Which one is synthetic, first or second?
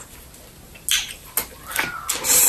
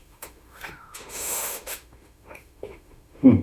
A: second